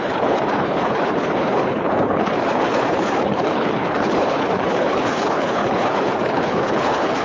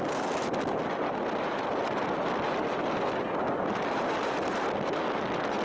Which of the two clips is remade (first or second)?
first